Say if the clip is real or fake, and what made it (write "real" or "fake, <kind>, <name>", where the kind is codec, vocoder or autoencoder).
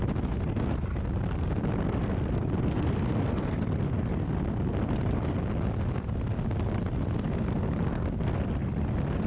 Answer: real